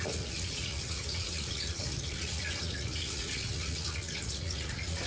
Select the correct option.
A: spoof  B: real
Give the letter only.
A